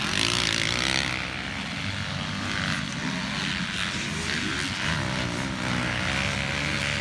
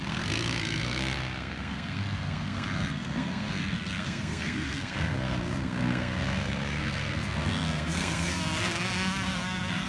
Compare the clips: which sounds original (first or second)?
first